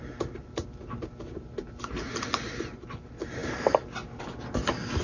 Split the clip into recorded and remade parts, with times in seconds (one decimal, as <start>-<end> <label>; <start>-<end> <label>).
0.0-5.0 recorded